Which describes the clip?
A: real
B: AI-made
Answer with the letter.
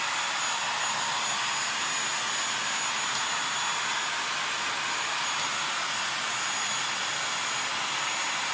A